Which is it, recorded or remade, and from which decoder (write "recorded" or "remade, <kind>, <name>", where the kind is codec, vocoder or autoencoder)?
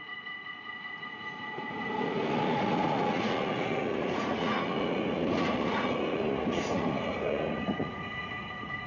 remade, vocoder, Vocos